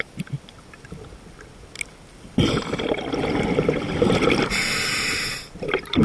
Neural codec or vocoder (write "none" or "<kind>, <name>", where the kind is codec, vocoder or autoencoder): none